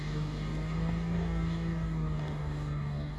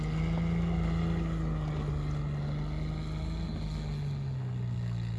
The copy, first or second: first